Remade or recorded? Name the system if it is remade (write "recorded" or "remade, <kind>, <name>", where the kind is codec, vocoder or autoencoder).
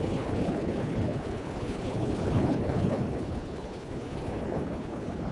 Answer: remade, codec, HILCodec